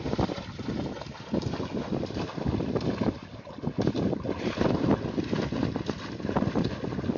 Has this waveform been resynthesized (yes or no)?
no